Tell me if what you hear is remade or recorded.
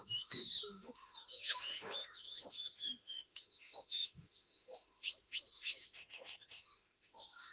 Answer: remade